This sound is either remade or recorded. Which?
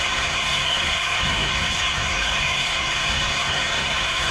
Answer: remade